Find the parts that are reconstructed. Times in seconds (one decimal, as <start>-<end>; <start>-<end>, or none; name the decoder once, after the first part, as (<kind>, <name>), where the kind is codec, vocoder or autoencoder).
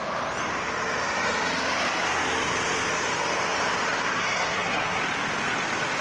4.2-5.0 (codec, SNAC)